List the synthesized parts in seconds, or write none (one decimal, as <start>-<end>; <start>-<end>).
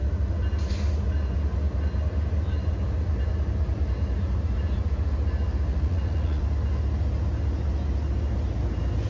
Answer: 5.7-6.4